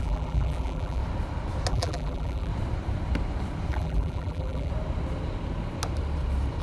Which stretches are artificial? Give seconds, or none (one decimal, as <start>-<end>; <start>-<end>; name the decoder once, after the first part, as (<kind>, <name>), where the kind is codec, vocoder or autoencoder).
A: 0.0-1.0 (vocoder, BigVGAN v2); 1.7-2.5; 3.7-4.7

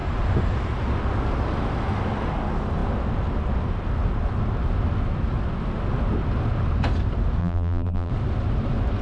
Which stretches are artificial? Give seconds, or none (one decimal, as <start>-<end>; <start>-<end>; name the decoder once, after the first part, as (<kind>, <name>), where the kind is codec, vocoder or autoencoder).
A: 7.4-8.1 (vocoder, BigVGAN v2)

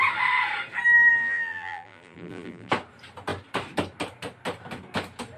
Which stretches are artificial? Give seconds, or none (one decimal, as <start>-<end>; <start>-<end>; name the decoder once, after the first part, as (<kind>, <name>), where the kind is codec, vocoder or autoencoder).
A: 1.2-2.7 (vocoder, BigVGAN v2)

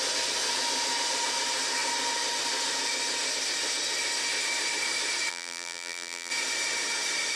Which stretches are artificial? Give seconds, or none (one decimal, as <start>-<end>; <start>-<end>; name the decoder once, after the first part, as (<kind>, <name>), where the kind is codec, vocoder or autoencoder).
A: 5.3-6.3 (vocoder, BigVGAN v2)

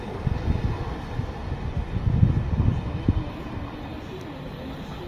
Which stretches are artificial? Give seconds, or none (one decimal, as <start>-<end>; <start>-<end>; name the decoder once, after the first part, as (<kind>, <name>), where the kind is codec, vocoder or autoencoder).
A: none

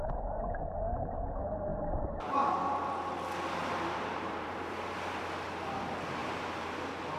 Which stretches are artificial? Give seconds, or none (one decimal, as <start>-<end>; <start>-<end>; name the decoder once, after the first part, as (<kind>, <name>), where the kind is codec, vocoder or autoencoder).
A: 1.7-2.9 (vocoder, BigVGAN v2); 3.6-5.2; 6.2-6.8